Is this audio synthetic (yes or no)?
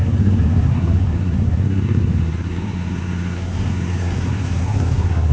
yes